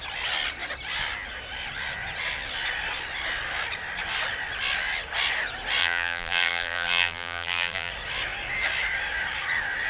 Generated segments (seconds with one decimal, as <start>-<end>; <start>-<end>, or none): 5.8-7.9

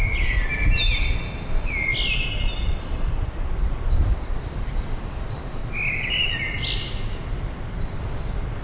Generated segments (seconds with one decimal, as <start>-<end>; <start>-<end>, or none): 1.9-3.6; 5.6-8.0

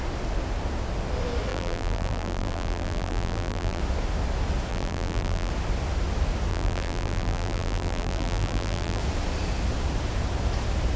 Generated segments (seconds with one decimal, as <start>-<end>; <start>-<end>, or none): 1.5-3.8; 4.7-5.5; 6.5-9.0

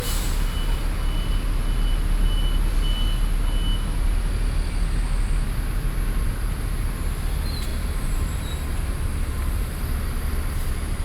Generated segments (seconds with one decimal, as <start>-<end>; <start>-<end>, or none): 7.7-9.8

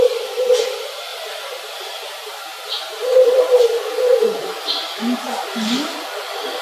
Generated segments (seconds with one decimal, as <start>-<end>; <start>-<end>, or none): 0.0-6.6

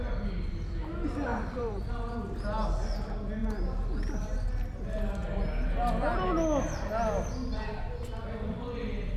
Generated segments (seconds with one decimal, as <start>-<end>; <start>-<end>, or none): 1.3-2.0

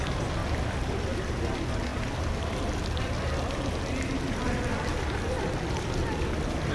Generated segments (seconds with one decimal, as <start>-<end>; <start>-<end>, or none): 0.4-1.3; 1.9-2.5; 4.7-5.3

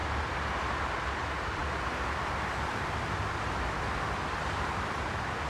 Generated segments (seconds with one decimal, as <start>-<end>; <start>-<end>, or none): 1.1-5.5